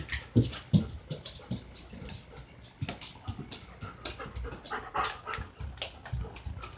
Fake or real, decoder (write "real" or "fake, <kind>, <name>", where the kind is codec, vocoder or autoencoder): real